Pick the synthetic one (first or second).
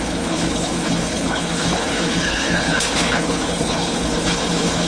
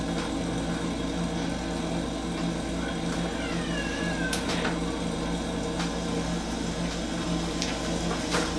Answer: first